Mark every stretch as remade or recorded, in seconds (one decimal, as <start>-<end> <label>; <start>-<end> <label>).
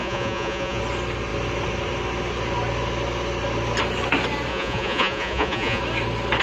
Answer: 0.0-0.8 remade; 0.8-4.5 recorded; 4.5-5.8 remade; 5.8-6.4 recorded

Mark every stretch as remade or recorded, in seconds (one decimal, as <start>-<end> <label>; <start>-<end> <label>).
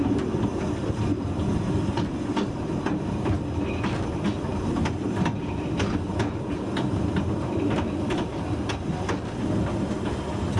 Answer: 0.0-10.6 recorded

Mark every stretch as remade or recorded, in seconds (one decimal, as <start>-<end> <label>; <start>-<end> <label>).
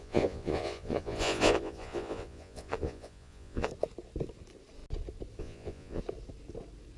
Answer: 0.0-3.7 remade; 3.7-5.4 recorded; 5.4-6.0 remade; 6.0-7.0 recorded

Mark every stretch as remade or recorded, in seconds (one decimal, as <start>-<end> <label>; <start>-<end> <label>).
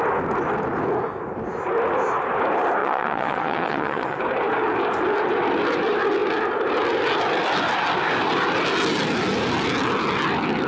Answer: 0.0-2.8 recorded; 2.8-4.2 remade; 4.2-10.7 recorded